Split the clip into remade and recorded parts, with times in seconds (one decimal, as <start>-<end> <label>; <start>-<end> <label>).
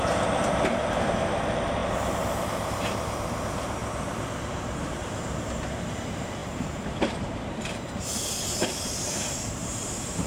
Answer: 0.0-3.8 remade; 3.8-5.0 recorded; 5.0-10.3 remade